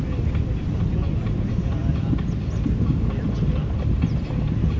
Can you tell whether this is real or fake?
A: real